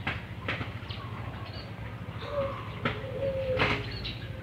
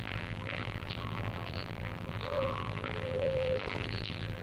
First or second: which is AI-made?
second